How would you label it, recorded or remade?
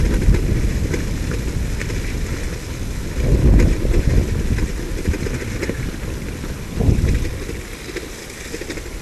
recorded